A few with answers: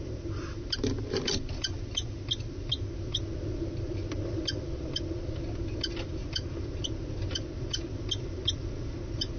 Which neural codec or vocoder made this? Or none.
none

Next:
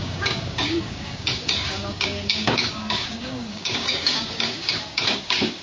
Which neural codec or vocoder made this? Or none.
codec, DAC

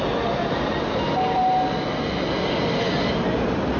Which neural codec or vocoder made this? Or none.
none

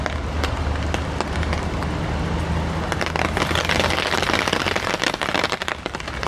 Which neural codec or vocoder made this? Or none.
none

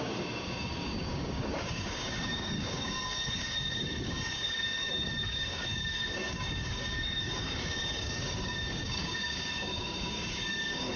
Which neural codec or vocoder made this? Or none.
codec, DAC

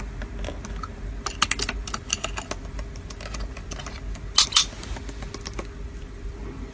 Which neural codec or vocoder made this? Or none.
none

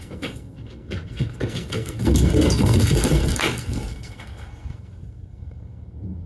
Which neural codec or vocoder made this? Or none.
codec, SNAC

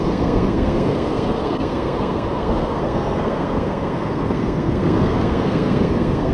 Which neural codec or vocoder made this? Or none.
codec, SNAC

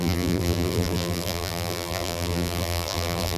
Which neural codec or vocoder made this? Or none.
vocoder, BigVGAN v2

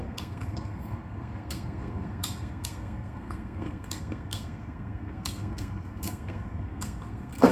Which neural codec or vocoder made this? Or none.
codec, SNAC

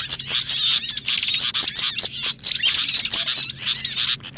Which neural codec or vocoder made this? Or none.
none